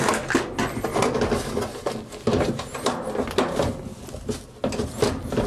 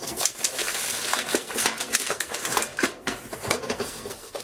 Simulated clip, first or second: second